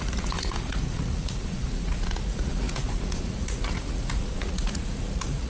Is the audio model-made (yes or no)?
yes